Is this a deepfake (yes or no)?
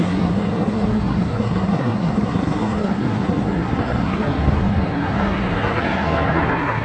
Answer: yes